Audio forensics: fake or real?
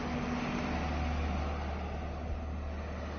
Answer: real